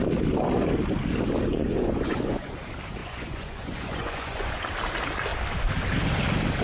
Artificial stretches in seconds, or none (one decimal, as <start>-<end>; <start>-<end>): 1.5-2.5; 3.0-4.6